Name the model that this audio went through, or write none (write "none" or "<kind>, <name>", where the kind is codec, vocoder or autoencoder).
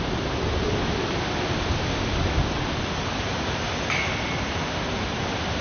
none